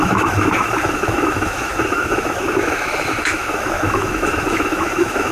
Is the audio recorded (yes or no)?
no